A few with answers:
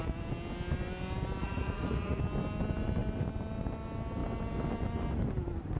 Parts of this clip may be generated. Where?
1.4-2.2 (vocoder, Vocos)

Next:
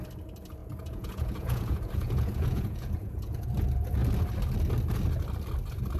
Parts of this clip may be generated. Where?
0.6-3.5 (vocoder, Vocos)

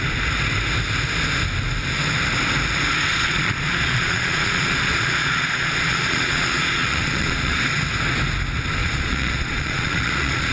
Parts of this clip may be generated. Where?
3.1-7.6 (vocoder, Vocos); 8.8-10.5

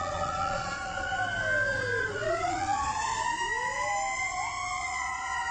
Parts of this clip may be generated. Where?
0.0-1.2 (vocoder, Vocos); 2.0-3.1; 4.8-5.5

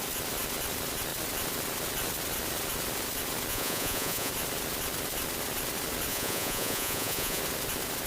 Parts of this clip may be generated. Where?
3.5-4.3 (vocoder, Vocos); 6.1-7.4

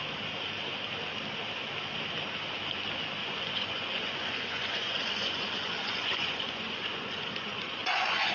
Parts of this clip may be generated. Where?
3.2-8.3 (vocoder, Vocos)

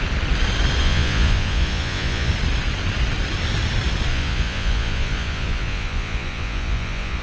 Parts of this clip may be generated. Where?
0.8-2.3 (vocoder, Vocos); 4.1-7.2